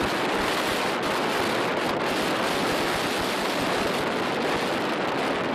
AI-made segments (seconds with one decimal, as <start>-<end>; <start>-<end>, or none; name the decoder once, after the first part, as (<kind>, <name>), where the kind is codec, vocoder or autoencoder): none